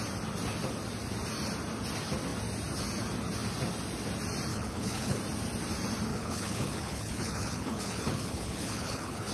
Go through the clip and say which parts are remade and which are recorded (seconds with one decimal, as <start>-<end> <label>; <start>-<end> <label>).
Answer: 0.0-4.5 recorded; 4.5-5.2 remade; 5.2-6.1 recorded; 6.1-9.3 remade